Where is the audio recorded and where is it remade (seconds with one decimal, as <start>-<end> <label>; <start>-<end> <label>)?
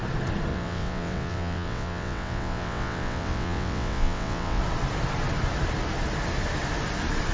0.0-0.5 recorded; 0.5-4.6 remade; 4.6-7.3 recorded